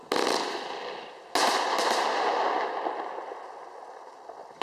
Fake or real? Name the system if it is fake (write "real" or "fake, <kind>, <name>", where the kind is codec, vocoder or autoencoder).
real